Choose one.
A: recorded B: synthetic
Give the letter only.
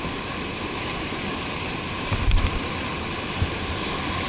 A